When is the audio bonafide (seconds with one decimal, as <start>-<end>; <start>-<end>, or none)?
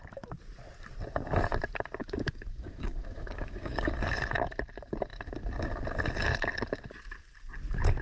0.0-2.0; 3.9-8.0